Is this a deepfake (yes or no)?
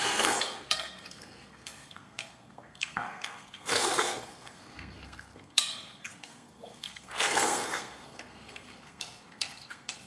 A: yes